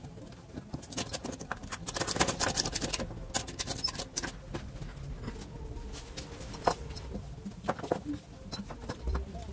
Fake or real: real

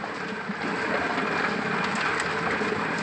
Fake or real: real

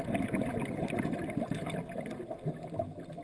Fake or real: real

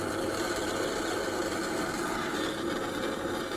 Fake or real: real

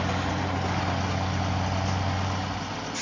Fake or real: real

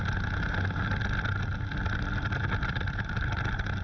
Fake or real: fake